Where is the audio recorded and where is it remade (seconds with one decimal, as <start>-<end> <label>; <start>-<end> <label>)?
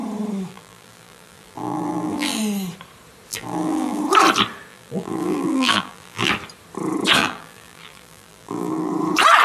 0.0-0.5 recorded; 0.5-2.4 remade; 2.4-3.3 recorded; 3.3-4.0 remade; 4.0-4.7 recorded; 4.7-6.3 remade; 6.3-7.2 recorded; 7.2-8.9 remade; 8.9-9.4 recorded